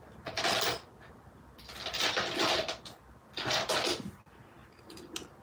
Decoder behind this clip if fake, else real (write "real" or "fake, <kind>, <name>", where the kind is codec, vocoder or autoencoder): real